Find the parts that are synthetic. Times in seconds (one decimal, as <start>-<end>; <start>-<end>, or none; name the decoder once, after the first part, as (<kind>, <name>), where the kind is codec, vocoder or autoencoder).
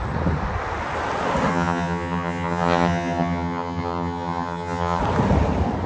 1.5-5.0 (vocoder, HiFi-GAN)